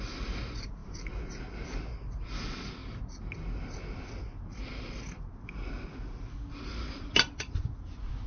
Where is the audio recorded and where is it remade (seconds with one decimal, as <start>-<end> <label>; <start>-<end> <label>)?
0.0-8.3 recorded